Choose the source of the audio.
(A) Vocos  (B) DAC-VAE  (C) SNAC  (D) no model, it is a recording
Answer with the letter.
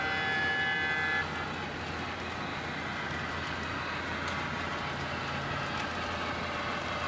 D